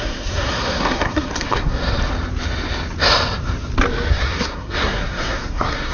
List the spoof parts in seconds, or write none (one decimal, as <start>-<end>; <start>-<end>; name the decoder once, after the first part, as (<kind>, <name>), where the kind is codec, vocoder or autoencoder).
0.0-1.8 (codec, SNAC); 4.1-5.9